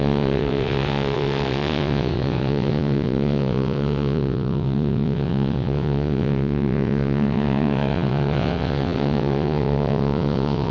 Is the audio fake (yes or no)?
yes